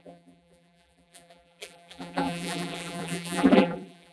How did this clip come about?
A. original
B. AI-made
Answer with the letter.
B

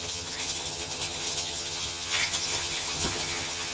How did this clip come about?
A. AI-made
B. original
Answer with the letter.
A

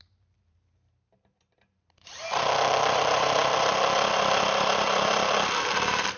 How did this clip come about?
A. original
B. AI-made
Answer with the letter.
B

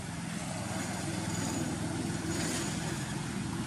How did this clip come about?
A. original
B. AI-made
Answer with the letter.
A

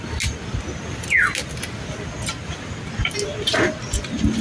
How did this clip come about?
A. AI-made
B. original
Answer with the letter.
B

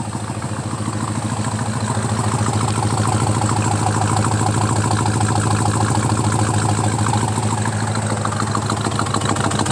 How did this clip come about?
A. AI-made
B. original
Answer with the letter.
B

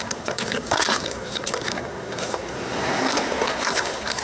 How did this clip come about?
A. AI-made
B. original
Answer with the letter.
A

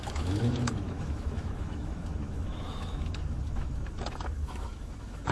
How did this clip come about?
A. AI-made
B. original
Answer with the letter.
A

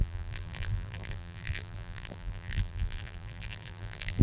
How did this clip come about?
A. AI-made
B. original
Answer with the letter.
A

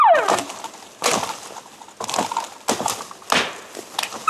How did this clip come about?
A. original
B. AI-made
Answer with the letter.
A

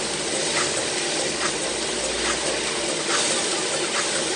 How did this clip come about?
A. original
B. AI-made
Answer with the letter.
A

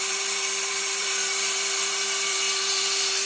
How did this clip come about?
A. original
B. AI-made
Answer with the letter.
B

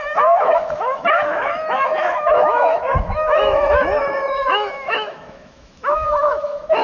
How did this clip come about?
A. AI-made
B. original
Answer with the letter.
A